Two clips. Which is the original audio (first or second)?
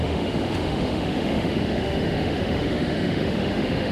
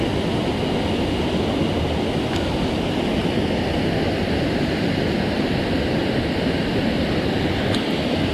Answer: second